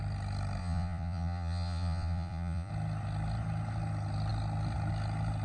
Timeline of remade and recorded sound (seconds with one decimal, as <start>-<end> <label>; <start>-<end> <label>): 0.0-0.6 recorded; 0.6-2.7 remade; 2.7-5.4 recorded